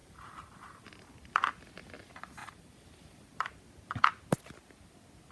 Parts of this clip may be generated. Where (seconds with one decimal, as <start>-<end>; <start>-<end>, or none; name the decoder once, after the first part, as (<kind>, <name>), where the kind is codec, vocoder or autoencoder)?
0.0-0.9 (vocoder, BigVGAN v2); 2.4-3.3